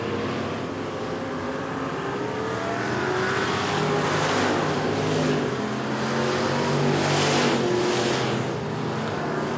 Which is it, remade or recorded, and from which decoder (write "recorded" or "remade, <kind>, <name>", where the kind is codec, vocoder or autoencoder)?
recorded